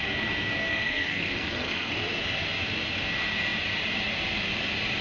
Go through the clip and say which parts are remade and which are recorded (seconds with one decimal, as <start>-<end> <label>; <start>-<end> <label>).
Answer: 0.0-0.7 recorded; 0.7-1.9 remade; 1.9-5.0 recorded